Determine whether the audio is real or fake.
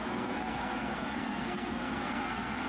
fake